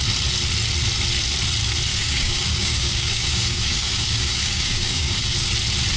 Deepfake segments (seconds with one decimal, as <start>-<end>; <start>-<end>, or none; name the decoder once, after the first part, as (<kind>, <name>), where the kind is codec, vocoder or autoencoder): 1.9-5.5 (codec, DAC)